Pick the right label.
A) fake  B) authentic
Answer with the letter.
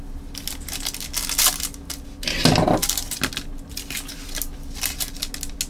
B